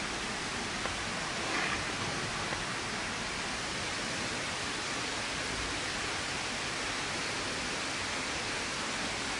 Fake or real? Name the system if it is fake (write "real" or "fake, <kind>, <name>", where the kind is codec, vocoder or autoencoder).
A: real